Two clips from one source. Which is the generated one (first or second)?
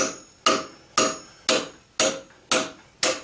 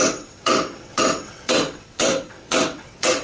second